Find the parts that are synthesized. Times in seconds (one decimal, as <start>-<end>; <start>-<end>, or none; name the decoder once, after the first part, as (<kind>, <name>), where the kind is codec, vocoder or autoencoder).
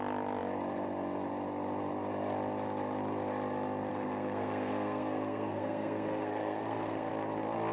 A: 3.9-7.1 (codec, SNAC)